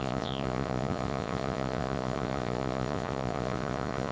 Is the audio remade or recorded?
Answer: remade